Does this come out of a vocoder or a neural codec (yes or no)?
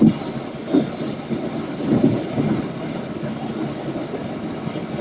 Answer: no